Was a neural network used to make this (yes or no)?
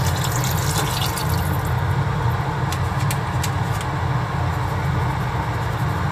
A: no